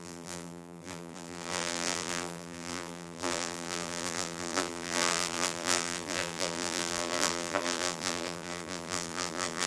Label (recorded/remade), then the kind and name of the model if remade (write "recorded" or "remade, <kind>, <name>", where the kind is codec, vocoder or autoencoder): remade, vocoder, BigVGAN v2